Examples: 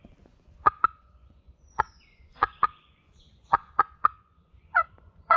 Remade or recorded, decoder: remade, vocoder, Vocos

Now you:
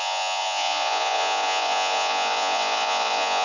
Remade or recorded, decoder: remade, vocoder, Vocos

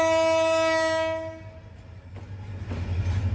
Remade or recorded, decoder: recorded